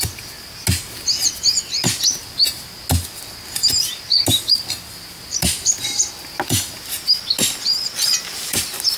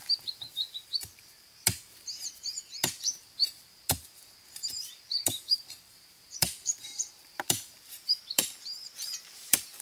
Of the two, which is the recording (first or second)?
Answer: first